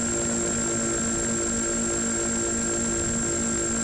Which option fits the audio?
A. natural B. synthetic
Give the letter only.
A